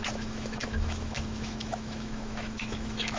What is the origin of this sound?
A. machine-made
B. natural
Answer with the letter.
A